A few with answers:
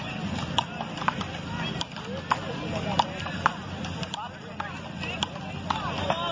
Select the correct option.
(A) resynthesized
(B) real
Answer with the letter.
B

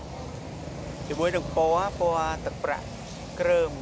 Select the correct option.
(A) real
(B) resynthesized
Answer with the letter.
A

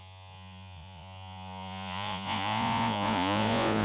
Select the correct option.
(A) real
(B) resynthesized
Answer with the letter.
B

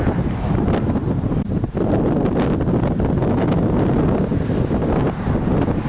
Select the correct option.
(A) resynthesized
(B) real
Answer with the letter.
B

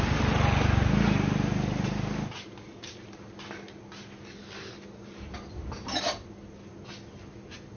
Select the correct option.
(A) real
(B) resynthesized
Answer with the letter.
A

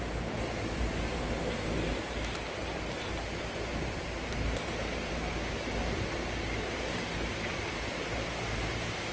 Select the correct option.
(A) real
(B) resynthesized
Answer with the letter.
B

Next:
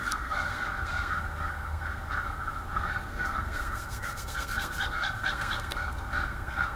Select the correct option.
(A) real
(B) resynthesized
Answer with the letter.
B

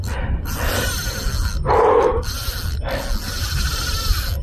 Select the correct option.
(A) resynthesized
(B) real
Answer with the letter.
B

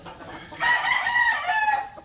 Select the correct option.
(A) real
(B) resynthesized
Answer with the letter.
A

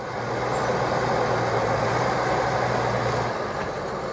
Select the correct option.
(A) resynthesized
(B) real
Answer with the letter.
B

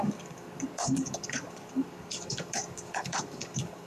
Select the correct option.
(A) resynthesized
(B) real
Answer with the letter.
A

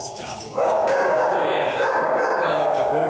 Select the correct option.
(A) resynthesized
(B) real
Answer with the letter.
A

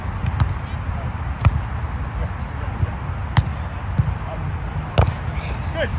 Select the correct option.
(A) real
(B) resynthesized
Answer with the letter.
A